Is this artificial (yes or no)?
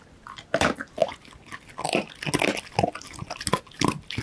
no